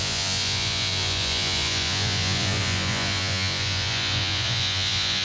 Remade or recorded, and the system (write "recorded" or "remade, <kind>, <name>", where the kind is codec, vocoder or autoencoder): remade, vocoder, Vocos